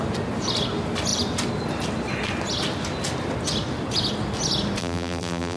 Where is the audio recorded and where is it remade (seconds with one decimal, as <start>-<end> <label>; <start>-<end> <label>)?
0.0-4.8 recorded; 4.8-5.6 remade